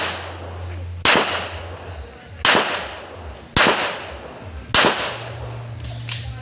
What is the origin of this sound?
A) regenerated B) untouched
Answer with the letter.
B